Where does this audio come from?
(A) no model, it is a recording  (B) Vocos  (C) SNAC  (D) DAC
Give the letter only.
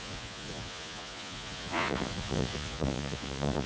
B